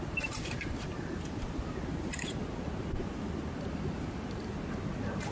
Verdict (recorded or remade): recorded